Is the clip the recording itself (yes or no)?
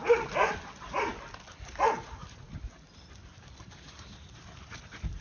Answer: yes